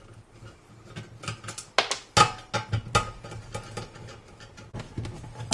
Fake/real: real